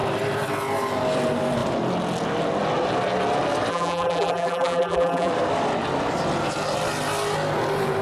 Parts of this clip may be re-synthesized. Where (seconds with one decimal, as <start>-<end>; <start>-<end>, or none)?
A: 3.7-5.3